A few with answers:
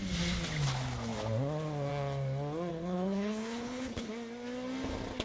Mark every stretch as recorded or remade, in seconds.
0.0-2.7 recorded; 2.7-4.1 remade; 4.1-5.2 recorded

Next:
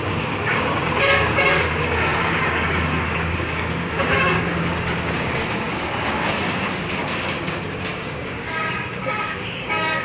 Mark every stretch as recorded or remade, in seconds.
0.0-10.0 remade

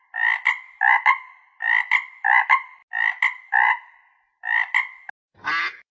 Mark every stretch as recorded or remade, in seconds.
0.0-5.9 recorded

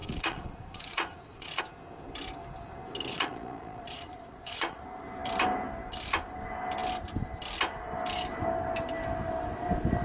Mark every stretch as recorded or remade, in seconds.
0.0-1.6 remade; 1.6-3.1 recorded; 3.1-4.8 remade; 4.8-10.0 recorded